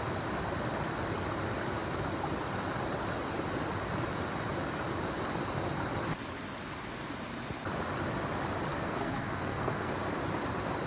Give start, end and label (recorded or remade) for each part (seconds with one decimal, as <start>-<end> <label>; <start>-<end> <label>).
0.0-8.7 recorded; 8.7-9.9 remade; 9.9-10.9 recorded